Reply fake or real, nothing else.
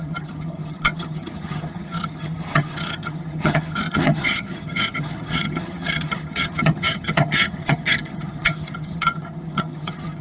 fake